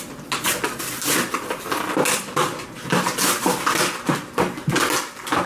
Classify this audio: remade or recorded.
recorded